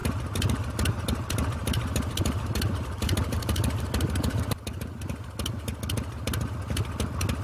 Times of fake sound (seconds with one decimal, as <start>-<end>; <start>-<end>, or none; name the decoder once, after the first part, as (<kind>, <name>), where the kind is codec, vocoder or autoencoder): 0.0-4.4 (vocoder, BigVGAN v2)